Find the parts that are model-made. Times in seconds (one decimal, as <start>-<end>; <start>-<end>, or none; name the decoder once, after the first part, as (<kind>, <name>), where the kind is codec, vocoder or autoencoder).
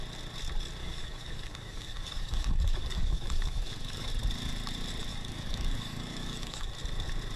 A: 0.8-4.1 (codec, DAC); 5.1-6.7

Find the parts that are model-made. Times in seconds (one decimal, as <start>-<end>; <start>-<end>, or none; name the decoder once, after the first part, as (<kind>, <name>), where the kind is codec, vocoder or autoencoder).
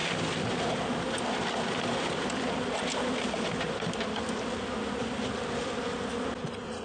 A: none